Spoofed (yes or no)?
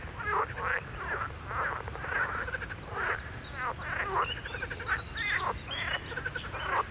no